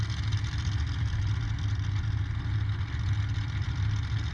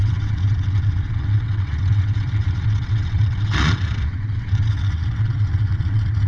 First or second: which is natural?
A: first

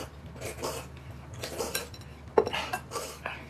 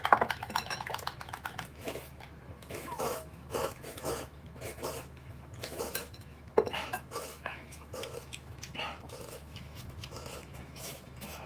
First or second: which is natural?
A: first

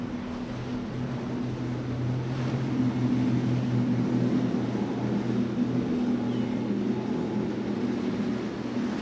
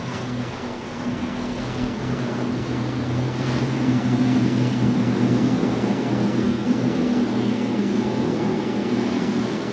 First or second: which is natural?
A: first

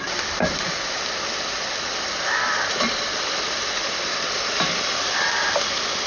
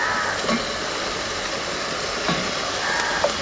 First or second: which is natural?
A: second